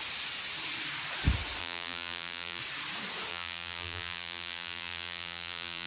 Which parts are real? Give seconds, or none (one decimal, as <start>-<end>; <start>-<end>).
0.0-1.6; 2.6-3.3